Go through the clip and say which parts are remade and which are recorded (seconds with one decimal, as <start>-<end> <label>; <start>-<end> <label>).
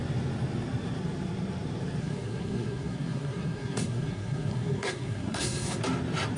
0.0-2.0 recorded; 2.0-5.8 remade; 5.8-6.4 recorded